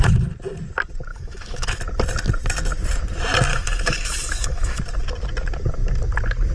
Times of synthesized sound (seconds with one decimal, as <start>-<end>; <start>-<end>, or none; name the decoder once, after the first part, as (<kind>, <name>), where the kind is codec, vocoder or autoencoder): 1.1-1.8 (autoencoder, DAC-VAE); 3.5-4.8